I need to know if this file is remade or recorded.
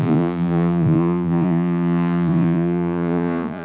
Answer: remade